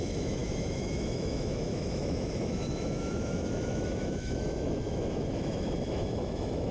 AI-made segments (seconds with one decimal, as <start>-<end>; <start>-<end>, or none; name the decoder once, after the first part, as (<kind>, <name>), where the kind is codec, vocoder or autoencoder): 0.0-6.7 (autoencoder, DAC-VAE)